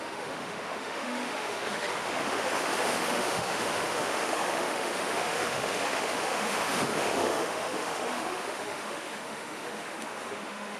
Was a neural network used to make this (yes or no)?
yes